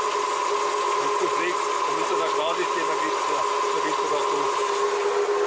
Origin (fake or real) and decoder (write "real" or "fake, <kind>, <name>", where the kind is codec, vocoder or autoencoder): real